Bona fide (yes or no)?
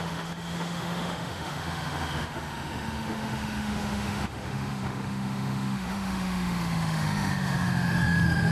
no